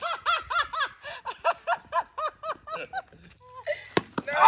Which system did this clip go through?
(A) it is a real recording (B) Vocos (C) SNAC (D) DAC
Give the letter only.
A